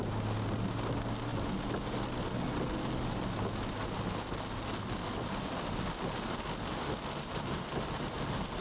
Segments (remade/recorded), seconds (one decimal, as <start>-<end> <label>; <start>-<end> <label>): 0.0-8.6 recorded

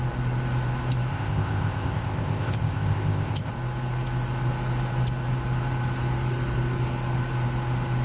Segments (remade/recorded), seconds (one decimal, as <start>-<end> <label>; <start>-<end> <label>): 0.0-1.1 recorded; 1.1-3.5 remade; 3.5-8.0 recorded

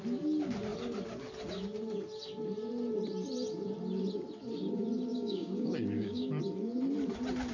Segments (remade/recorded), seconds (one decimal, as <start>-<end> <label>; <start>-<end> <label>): 0.0-5.1 recorded; 5.1-6.4 remade; 6.4-7.5 recorded

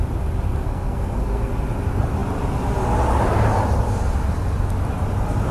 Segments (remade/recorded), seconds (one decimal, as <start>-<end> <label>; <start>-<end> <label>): 0.0-0.5 recorded; 0.5-1.5 remade; 1.5-5.5 recorded

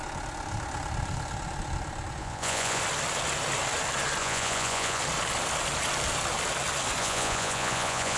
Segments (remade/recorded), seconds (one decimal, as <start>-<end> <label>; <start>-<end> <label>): 0.0-2.2 recorded; 2.2-2.8 remade; 2.8-4.2 recorded; 4.2-5.0 remade; 5.0-7.0 recorded; 7.0-8.2 remade

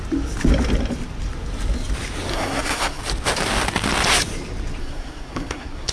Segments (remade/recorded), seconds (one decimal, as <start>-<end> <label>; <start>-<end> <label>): 0.0-2.3 recorded; 2.3-3.0 remade; 3.0-4.8 recorded; 4.8-5.9 remade

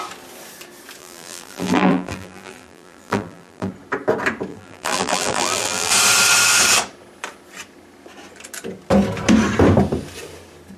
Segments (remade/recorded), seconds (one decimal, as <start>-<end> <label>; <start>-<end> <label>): 0.0-1.0 recorded; 1.0-3.7 remade; 3.7-4.5 recorded; 4.5-5.9 remade; 5.9-10.8 recorded

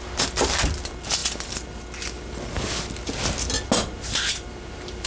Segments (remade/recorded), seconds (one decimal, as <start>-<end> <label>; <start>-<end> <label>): 0.0-5.1 recorded